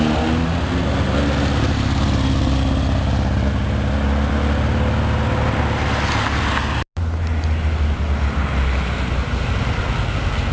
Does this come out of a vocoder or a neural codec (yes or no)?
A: no